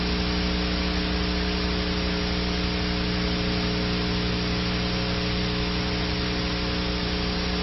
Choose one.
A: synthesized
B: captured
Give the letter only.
B